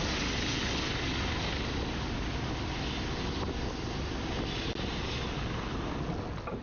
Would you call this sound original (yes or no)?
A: yes